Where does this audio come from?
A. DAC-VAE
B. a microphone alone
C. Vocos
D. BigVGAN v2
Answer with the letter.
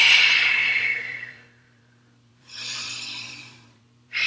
D